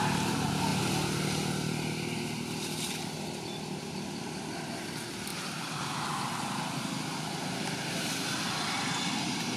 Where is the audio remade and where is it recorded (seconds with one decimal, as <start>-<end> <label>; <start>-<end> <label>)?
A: 0.0-0.7 remade; 0.7-3.8 recorded; 3.8-9.6 remade